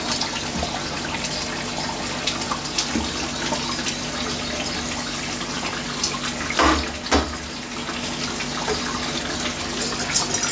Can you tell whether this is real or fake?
real